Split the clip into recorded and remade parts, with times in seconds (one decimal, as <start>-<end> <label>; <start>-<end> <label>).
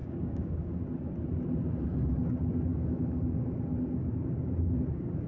0.0-0.8 remade; 0.8-2.7 recorded; 2.7-3.2 remade; 3.2-5.3 recorded